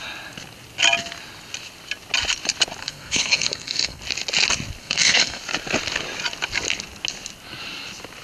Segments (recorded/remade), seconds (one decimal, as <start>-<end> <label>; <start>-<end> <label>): 0.0-2.8 recorded; 2.8-4.0 remade; 4.0-4.8 recorded; 4.8-5.4 remade; 5.4-8.2 recorded